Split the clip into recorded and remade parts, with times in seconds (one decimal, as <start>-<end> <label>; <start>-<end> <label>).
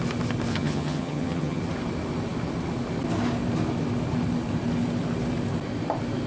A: 0.0-0.5 recorded; 0.5-1.6 remade; 1.6-6.3 recorded